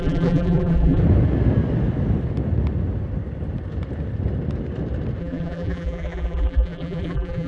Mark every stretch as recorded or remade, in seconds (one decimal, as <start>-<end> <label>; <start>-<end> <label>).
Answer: 0.0-1.0 remade; 1.0-5.2 recorded; 5.2-7.5 remade